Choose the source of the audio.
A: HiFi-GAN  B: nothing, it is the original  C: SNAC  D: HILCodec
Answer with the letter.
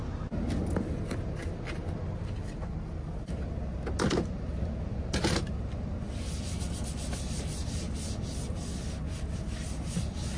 B